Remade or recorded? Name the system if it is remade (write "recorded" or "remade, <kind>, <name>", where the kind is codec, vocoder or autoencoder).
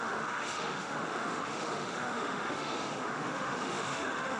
remade, autoencoder, DAC-VAE